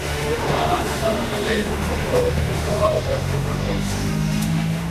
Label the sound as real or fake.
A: fake